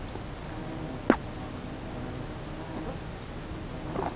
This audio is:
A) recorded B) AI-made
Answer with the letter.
A